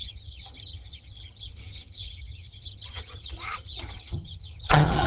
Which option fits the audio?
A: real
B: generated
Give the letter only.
B